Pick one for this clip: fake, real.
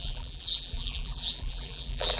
fake